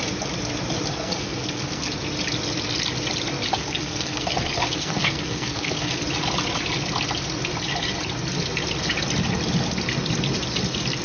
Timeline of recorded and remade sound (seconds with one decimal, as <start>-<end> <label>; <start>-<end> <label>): 0.0-0.9 recorded; 0.9-1.8 remade; 1.8-3.5 recorded; 3.5-6.0 remade; 6.0-11.0 recorded